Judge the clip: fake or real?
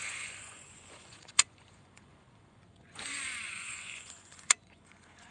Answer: fake